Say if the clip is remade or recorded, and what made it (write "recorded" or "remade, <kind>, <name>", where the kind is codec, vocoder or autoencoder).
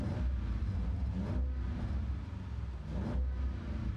recorded